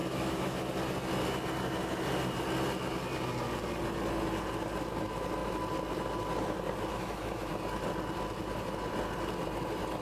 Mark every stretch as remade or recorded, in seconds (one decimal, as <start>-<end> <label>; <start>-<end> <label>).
0.0-0.6 remade; 0.6-6.9 recorded; 6.9-7.5 remade; 7.5-10.0 recorded